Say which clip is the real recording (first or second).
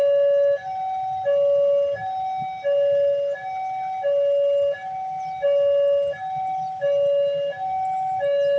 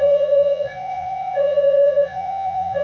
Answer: first